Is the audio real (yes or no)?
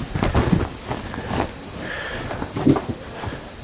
yes